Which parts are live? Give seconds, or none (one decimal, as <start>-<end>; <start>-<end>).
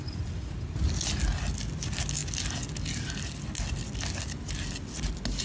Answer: 0.0-5.4